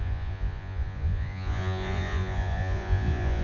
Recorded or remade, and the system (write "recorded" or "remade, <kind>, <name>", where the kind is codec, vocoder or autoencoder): remade, vocoder, Vocos